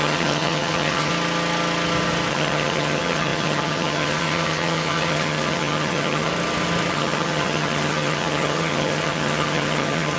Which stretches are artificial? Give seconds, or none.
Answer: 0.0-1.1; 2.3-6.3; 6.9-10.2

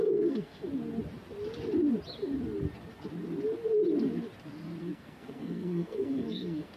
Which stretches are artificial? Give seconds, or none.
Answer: 0.0-0.7; 4.8-6.8

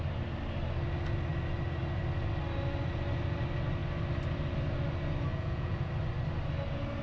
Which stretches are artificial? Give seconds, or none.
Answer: 5.3-5.9